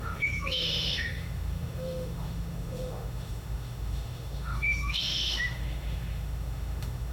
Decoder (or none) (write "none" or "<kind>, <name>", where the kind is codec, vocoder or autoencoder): autoencoder, DAC-VAE